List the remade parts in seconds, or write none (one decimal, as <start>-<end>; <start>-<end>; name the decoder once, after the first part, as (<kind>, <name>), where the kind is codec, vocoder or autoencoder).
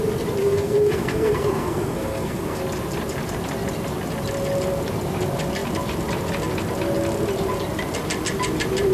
0.4-2.6 (codec, SNAC)